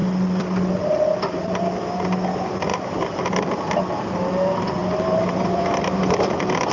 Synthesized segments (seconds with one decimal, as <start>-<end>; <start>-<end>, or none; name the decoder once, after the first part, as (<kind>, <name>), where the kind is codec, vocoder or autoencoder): 2.7-3.5 (vocoder, BigVGAN v2); 4.8-6.0